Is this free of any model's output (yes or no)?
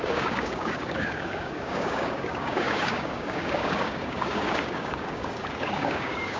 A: no